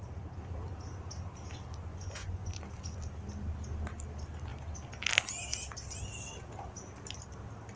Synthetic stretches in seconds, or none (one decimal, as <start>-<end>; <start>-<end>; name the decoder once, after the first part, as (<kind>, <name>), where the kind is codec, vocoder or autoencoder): 1.9-2.6 (vocoder, Vocos)